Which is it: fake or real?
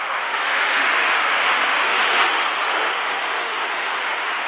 fake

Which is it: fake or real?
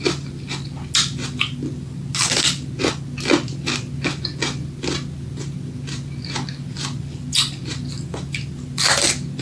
real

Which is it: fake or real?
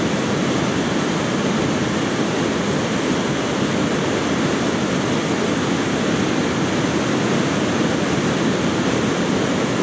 real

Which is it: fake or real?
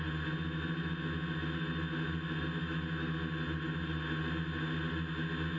real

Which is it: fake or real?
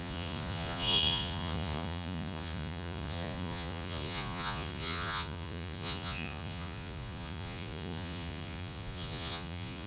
fake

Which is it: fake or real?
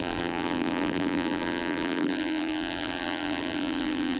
fake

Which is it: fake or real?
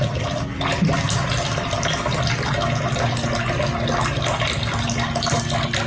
real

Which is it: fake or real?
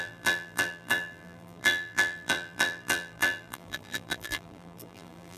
fake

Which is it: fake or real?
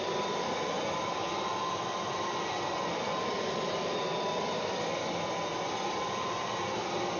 real